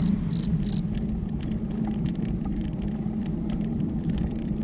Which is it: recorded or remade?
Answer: remade